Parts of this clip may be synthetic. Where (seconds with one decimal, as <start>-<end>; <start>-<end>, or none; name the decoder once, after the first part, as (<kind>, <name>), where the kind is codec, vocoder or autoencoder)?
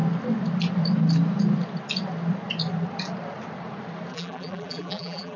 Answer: 4.1-5.4 (vocoder, BigVGAN v2)